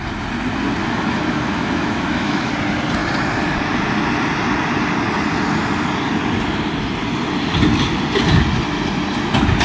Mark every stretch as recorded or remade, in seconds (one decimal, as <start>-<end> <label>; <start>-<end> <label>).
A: 0.0-0.8 recorded; 0.8-2.5 remade; 2.5-9.6 recorded